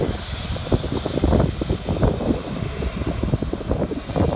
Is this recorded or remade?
recorded